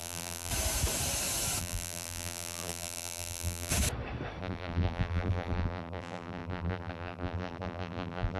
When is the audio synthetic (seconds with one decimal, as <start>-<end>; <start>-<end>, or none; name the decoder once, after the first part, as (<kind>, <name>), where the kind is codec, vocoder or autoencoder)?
0.0-0.5 (vocoder, BigVGAN v2); 1.6-3.7; 4.4-8.4